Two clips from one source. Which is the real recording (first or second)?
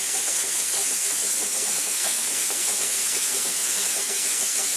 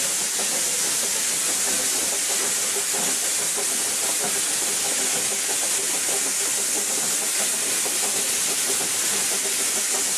second